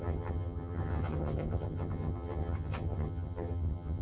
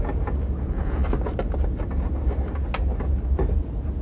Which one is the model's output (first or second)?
first